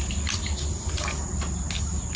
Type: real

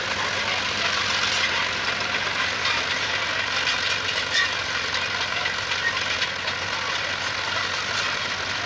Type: real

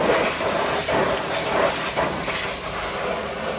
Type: real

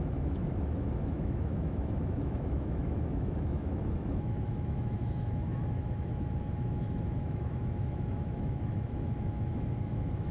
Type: fake